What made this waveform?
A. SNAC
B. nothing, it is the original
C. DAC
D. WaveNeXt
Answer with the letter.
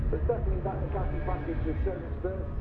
B